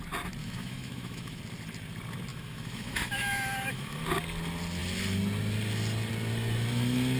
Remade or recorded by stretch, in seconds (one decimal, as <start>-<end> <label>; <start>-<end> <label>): 0.0-0.4 recorded; 0.4-1.4 remade; 1.4-2.3 recorded; 2.3-4.0 remade; 4.0-7.2 recorded